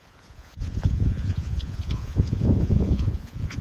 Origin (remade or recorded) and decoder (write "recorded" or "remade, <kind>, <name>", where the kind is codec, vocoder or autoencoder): remade, vocoder, Vocos